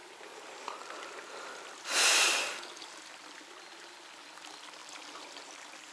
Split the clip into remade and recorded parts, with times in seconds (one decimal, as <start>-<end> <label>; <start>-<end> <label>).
0.0-5.9 recorded